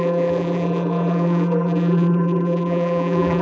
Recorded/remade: remade